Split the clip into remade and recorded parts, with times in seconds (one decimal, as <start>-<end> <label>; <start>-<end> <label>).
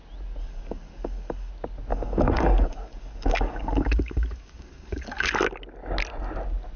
0.0-0.4 recorded; 0.4-1.5 remade; 1.5-1.9 recorded; 1.9-5.5 remade; 5.5-6.8 recorded